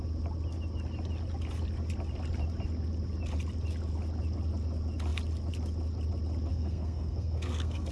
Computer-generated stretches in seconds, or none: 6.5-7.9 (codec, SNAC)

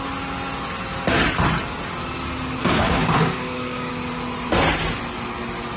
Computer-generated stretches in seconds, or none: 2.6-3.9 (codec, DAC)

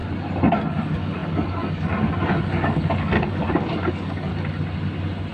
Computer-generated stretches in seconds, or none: 0.7-4.3 (codec, DAC)

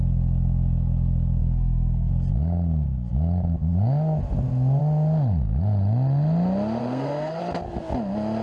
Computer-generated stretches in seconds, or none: 1.4-2.1 (codec, SNAC); 6.8-7.4